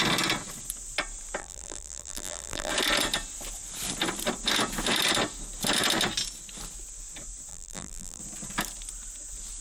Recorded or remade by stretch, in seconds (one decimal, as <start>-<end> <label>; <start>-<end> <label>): 0.0-1.4 recorded; 1.4-2.7 remade; 2.7-7.5 recorded; 7.5-8.2 remade; 8.2-9.6 recorded